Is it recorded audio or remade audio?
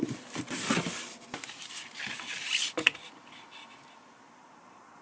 recorded